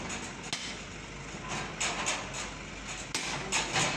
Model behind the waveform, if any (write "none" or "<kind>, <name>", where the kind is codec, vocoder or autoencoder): none